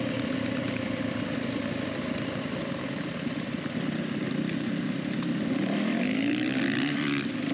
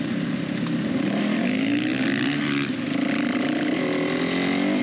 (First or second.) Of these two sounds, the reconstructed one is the first